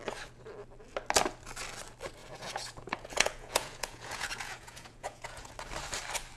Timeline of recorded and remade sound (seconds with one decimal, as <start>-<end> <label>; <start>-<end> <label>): 0.0-2.2 recorded; 2.2-5.5 remade; 5.5-6.4 recorded